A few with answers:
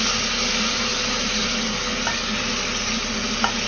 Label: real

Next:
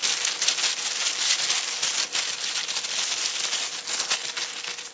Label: real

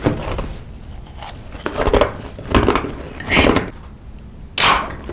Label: real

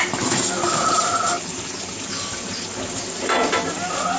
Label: real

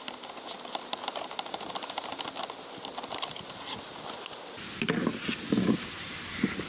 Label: real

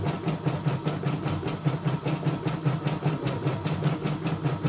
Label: real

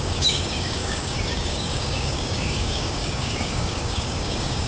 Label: fake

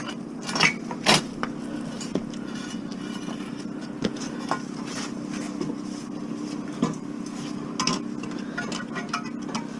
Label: real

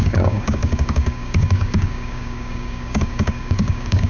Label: fake